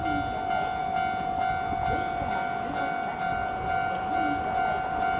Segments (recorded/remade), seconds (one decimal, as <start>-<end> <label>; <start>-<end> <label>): 0.0-5.2 recorded